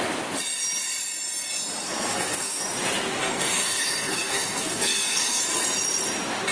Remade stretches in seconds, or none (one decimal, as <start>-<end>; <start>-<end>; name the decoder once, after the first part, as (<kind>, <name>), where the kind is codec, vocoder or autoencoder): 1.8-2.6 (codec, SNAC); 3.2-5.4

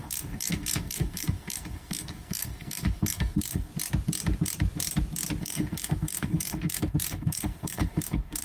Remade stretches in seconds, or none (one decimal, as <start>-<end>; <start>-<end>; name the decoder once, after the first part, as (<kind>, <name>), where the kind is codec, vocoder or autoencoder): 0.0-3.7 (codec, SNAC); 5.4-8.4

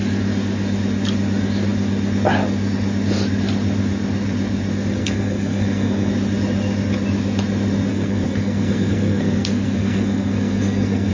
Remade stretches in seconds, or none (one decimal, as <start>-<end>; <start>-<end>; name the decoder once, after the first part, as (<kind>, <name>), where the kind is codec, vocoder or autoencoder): 5.0-6.1 (codec, SNAC); 7.9-11.1

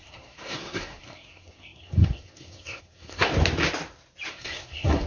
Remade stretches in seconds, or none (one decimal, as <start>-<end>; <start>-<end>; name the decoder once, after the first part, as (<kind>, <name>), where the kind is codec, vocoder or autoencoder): 0.0-3.3 (codec, SNAC); 4.3-5.1

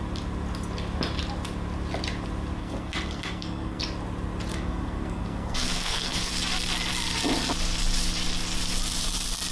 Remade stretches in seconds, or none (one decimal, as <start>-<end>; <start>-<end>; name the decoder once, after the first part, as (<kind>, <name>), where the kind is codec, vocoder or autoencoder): 2.6-3.8 (codec, SNAC); 4.5-6.3

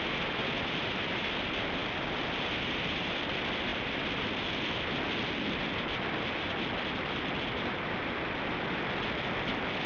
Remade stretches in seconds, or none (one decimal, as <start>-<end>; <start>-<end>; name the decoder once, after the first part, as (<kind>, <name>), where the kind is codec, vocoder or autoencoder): none